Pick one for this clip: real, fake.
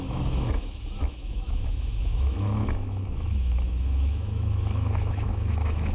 fake